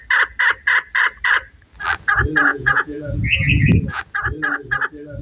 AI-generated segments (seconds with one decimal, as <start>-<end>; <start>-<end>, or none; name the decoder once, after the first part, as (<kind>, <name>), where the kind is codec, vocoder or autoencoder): 2.5-4.0 (vocoder, Vocos)

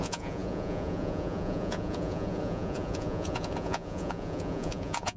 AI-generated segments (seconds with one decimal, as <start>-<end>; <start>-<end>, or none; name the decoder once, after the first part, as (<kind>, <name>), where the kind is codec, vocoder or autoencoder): 0.0-5.2 (vocoder, Vocos)

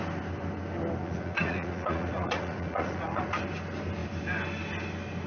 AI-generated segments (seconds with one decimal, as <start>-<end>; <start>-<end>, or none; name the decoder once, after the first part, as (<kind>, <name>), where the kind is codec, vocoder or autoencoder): 1.0-3.4 (vocoder, Vocos)